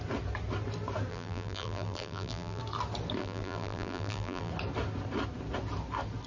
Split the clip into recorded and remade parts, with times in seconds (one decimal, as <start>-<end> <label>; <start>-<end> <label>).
0.0-1.1 recorded; 1.1-2.6 remade; 2.6-3.2 recorded; 3.2-4.5 remade; 4.5-6.3 recorded